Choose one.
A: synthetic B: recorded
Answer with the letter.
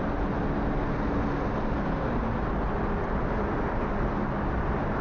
B